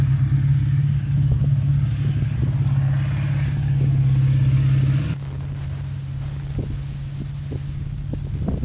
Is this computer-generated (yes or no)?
no